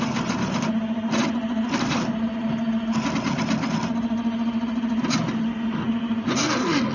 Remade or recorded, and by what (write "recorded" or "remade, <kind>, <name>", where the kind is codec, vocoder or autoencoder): recorded